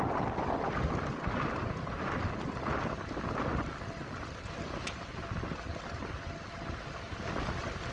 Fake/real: real